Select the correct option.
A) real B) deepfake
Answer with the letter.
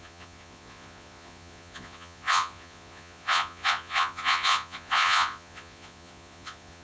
B